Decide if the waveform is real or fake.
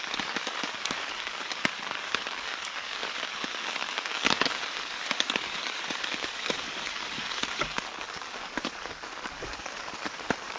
fake